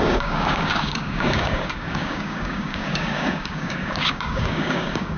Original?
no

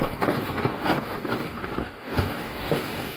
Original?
no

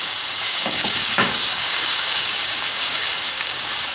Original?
no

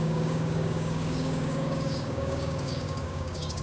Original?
no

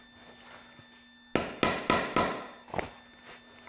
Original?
yes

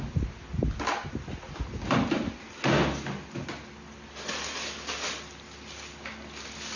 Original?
yes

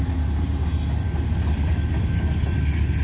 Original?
yes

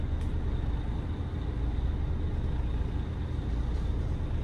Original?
yes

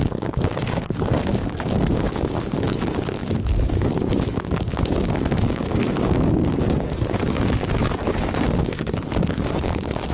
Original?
no